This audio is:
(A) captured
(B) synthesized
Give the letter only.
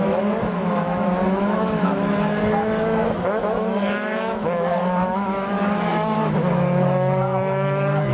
B